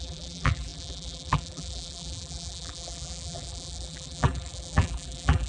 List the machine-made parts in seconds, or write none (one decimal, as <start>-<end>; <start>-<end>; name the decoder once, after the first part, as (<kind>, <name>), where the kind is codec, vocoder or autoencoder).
0.0-5.5 (vocoder, BigVGAN v2)